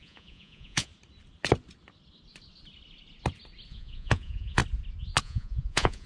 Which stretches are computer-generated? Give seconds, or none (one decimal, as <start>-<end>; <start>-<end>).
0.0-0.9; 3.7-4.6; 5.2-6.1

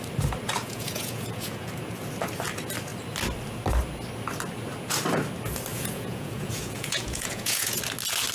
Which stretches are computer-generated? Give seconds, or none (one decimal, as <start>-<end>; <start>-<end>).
0.6-1.7; 5.7-7.8

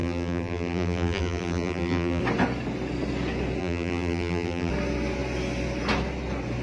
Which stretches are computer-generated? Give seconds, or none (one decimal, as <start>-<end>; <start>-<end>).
0.0-2.2; 3.6-4.7